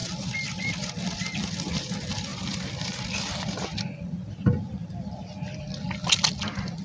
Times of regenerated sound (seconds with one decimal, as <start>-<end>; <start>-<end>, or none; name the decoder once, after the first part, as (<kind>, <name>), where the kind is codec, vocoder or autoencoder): none